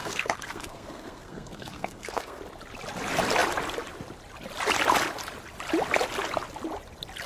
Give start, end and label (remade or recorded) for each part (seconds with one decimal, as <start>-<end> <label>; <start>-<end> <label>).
0.0-2.4 remade; 2.4-7.3 recorded